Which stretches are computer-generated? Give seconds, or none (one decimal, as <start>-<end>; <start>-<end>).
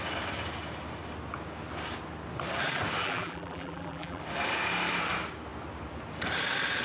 3.0-4.2